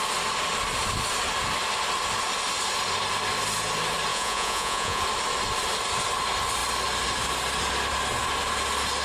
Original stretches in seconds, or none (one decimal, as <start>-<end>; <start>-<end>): 0.0-4.1; 5.0-9.0